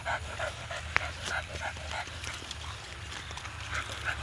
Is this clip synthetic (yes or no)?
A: no